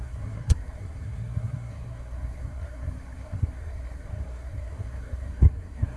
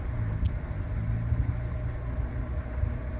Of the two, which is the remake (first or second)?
first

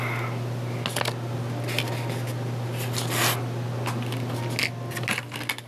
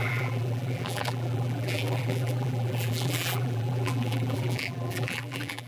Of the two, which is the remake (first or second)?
second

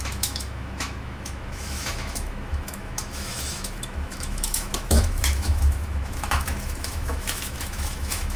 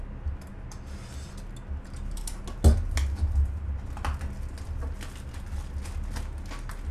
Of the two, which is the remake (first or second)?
first